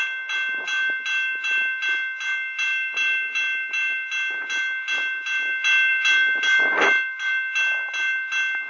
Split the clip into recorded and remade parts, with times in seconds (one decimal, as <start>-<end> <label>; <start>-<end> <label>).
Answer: 0.0-8.7 recorded